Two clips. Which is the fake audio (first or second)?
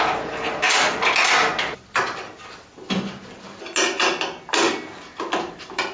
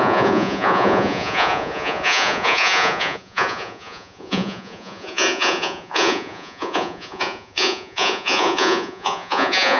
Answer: second